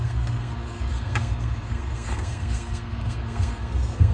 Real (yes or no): no